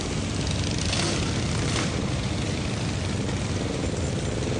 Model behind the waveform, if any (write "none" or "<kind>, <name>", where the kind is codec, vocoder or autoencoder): none